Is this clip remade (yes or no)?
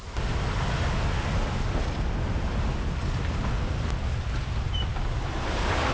no